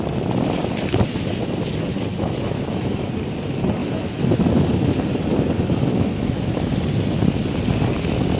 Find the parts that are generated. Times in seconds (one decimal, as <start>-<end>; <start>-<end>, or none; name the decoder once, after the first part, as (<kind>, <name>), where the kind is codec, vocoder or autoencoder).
2.1-3.1 (autoencoder, DAC-VAE); 3.8-4.4; 5.9-6.7